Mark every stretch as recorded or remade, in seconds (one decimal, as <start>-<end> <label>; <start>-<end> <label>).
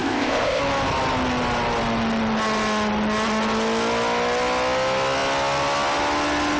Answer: 0.0-0.6 remade; 0.6-6.6 recorded